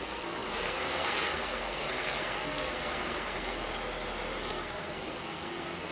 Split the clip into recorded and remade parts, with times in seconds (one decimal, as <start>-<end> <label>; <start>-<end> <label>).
0.0-3.7 remade; 3.7-4.4 recorded; 4.4-5.9 remade